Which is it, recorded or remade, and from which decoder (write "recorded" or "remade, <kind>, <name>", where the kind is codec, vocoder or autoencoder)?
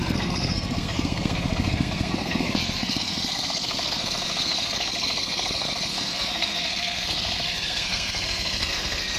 remade, codec, SNAC